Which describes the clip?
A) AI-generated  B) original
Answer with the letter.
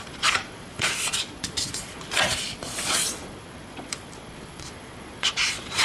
A